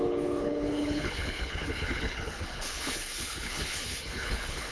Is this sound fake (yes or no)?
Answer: yes